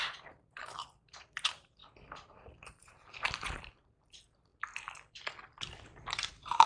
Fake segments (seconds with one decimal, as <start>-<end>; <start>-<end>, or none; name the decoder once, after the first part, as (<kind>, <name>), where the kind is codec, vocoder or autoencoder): 0.0-1.8 (vocoder, BigVGAN v2); 2.4-4.5; 6.3-6.7